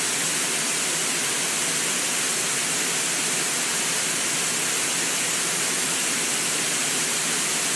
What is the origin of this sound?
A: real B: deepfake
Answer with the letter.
A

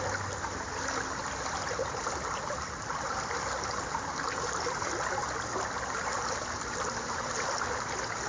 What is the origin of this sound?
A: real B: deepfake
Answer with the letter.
A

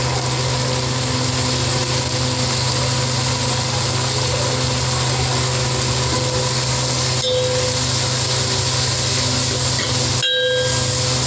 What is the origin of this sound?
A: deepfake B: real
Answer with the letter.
B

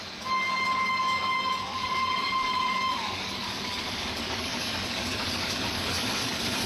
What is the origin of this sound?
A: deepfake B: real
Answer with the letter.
A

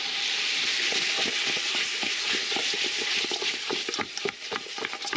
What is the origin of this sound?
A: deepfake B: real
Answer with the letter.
B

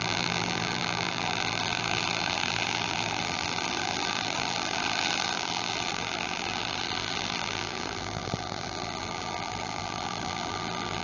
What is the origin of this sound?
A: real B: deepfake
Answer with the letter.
B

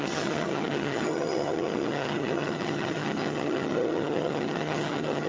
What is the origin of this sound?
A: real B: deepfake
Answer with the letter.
B